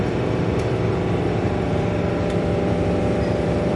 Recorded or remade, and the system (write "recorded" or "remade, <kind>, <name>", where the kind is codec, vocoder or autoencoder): remade, vocoder, BigVGAN v2